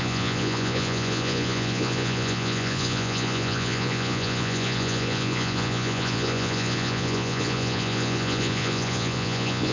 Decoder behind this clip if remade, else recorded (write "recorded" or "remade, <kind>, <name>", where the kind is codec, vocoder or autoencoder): remade, vocoder, Vocos